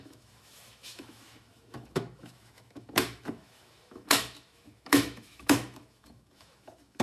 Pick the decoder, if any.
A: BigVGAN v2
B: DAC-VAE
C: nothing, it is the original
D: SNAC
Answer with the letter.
B